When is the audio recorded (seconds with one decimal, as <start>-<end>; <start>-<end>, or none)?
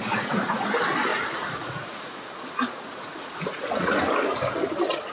0.7-1.1; 4.0-5.1